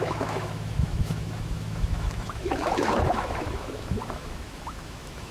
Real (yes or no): no